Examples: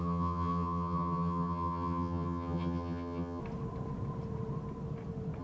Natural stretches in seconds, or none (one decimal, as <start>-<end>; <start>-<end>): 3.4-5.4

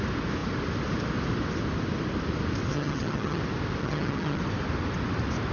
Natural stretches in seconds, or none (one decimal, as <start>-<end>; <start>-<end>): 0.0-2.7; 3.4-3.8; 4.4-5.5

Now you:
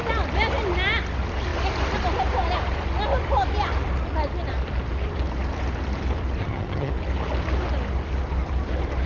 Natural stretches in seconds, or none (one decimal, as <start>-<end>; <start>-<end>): 0.0-6.4; 6.9-9.1

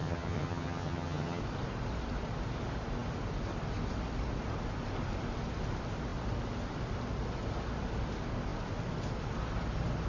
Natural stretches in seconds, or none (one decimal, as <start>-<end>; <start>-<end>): 1.4-10.1